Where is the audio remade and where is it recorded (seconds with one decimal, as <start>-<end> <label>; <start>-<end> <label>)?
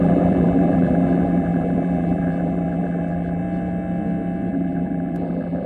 0.0-3.4 remade; 3.4-4.5 recorded; 4.5-5.7 remade